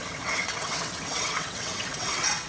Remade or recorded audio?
remade